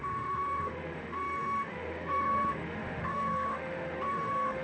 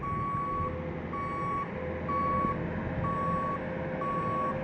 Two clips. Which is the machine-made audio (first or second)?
first